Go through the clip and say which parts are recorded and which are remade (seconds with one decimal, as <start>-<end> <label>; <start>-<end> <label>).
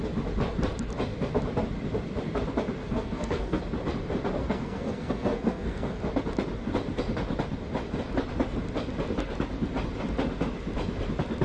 0.0-2.8 recorded; 2.8-3.6 remade; 3.6-4.4 recorded; 4.4-6.0 remade; 6.0-11.4 recorded